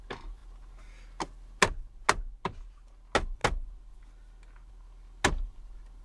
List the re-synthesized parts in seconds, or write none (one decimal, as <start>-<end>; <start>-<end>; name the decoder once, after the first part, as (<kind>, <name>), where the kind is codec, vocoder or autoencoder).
none

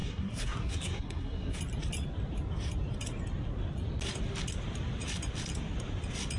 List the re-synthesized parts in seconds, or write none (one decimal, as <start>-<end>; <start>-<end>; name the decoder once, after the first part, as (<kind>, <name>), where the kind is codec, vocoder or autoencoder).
0.0-1.6 (codec, SNAC)